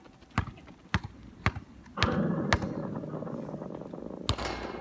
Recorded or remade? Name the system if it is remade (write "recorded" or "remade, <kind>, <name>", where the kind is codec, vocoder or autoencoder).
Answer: recorded